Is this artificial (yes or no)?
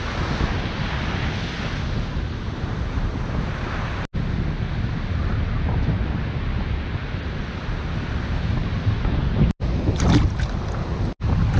no